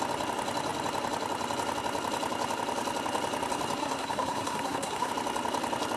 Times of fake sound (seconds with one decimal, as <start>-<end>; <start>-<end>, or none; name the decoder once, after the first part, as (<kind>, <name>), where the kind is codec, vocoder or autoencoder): 3.8-5.1 (codec, SNAC)